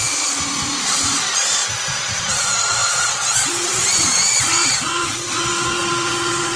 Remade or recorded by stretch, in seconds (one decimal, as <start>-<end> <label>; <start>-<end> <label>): 0.0-6.6 remade